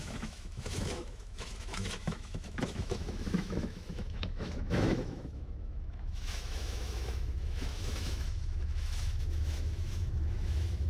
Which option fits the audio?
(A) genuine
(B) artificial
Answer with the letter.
B